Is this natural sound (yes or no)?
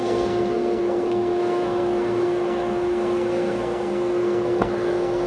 no